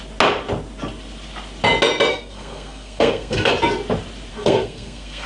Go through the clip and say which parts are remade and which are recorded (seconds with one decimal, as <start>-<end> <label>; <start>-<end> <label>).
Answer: 0.0-2.1 recorded; 2.1-3.5 remade; 3.5-4.3 recorded; 4.3-5.3 remade